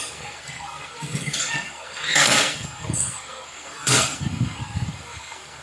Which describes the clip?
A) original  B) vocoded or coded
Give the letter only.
B